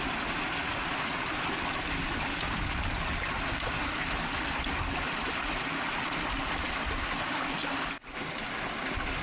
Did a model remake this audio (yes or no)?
no